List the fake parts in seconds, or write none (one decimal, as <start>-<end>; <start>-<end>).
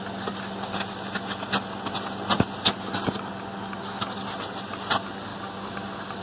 none